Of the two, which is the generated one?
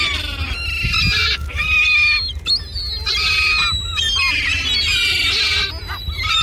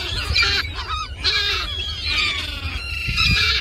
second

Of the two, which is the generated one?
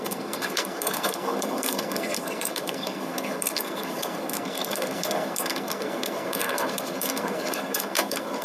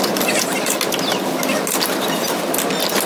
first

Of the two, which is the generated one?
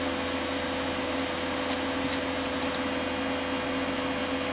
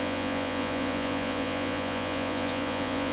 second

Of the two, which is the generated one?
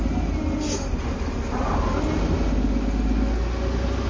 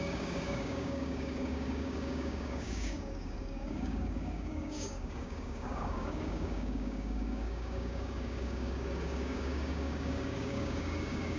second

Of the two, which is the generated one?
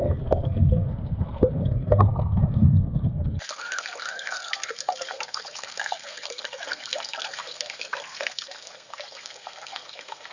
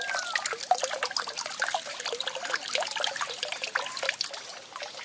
first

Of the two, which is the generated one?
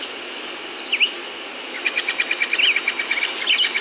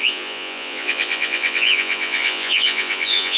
second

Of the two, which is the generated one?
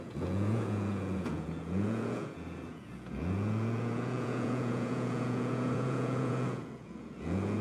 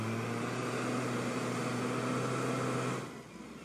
first